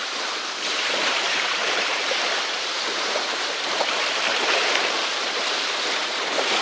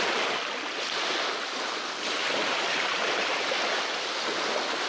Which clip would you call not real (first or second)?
first